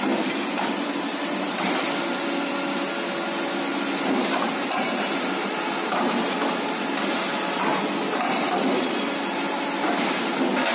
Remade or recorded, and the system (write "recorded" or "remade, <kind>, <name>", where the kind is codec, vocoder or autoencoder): recorded